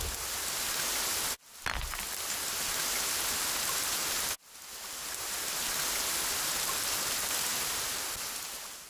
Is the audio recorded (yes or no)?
yes